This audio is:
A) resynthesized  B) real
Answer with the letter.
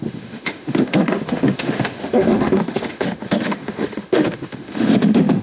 A